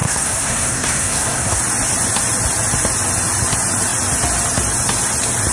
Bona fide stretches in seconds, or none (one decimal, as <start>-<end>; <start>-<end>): 1.6-5.5